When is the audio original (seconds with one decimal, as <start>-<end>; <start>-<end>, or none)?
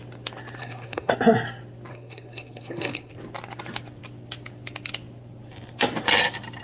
0.0-0.6; 1.1-1.9; 3.1-6.6